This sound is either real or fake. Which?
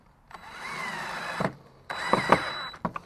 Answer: real